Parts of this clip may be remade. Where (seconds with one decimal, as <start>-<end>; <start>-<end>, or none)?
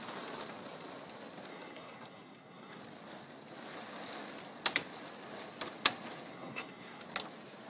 1.5-2.8; 6.3-7.0